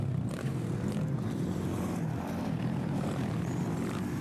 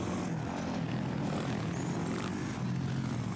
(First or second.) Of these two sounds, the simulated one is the first